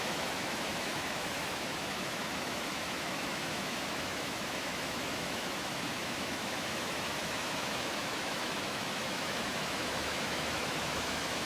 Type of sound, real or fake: fake